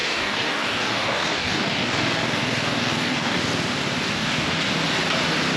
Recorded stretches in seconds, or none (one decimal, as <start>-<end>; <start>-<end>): 3.4-4.1; 4.7-5.6